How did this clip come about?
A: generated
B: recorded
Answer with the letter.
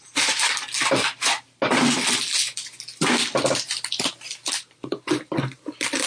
B